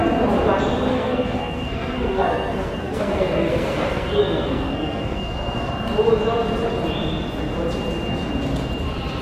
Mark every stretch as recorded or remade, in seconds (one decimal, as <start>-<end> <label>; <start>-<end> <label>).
0.0-0.9 recorded; 0.9-5.7 remade; 5.7-9.2 recorded